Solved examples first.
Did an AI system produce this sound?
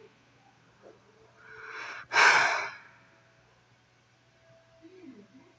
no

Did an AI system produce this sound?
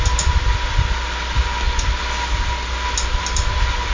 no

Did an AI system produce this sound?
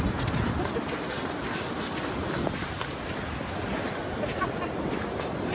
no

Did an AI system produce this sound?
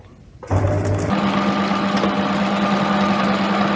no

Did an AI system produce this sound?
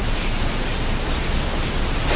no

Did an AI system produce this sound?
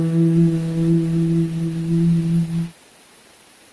no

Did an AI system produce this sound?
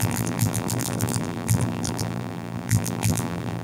yes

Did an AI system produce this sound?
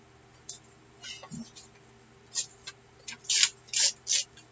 no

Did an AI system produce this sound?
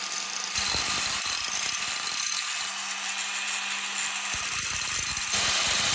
no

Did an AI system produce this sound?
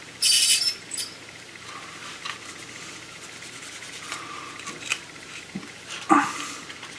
no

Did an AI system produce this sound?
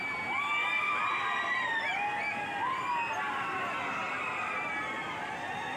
no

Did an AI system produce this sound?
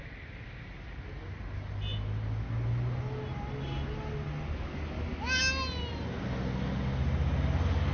no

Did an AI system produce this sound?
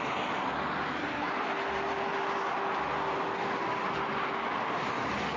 no